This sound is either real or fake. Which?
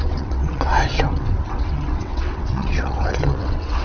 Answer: fake